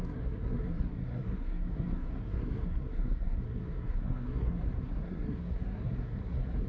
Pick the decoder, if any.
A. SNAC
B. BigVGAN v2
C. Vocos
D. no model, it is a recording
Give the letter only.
A